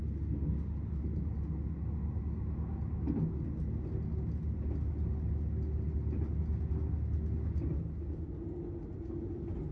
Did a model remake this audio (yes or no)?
no